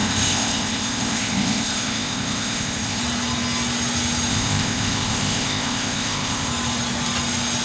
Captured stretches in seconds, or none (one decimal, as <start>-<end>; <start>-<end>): 3.0-4.3; 6.5-7.6